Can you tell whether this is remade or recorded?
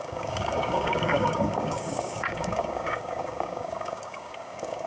remade